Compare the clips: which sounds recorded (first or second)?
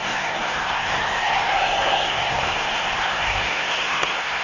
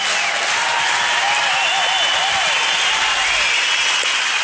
second